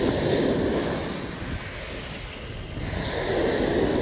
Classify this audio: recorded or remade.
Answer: recorded